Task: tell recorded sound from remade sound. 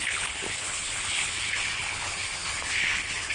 remade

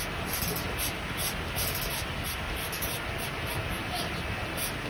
recorded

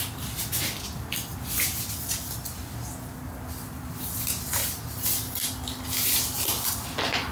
recorded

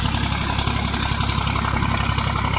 recorded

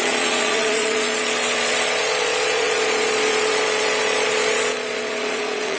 remade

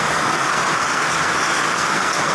remade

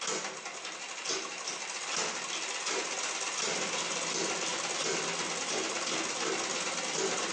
recorded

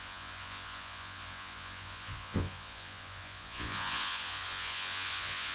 remade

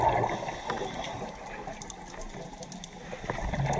recorded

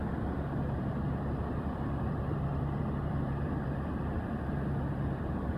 remade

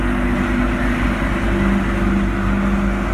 recorded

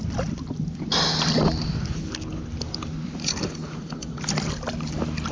recorded